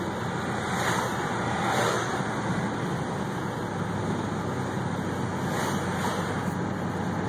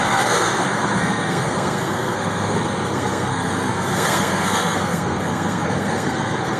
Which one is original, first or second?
first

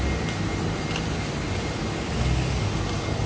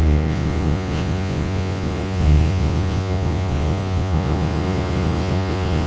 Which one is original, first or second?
first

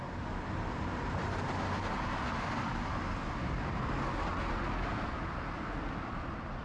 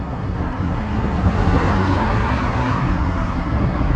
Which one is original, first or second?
first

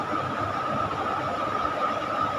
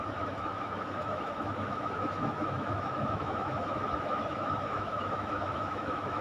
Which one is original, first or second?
first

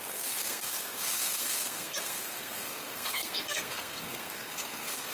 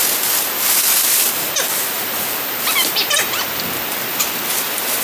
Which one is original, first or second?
second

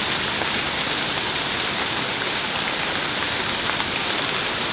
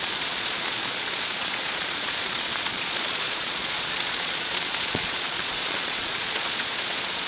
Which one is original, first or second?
first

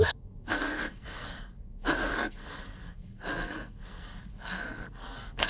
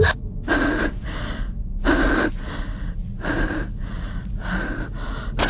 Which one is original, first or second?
second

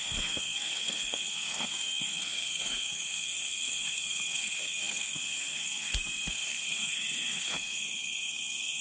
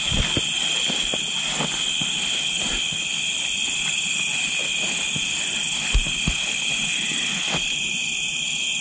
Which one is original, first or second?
second